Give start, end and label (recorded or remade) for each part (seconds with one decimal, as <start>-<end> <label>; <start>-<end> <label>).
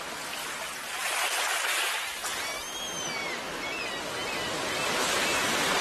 0.0-0.4 recorded; 0.4-2.2 remade; 2.2-3.2 recorded; 3.2-3.8 remade; 3.8-5.8 recorded